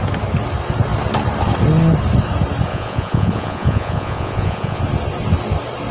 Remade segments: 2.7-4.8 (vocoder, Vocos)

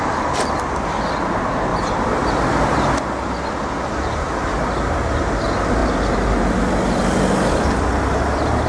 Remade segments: none

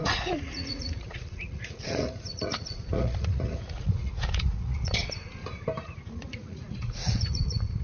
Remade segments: 0.0-5.0 (vocoder, Vocos); 5.8-7.8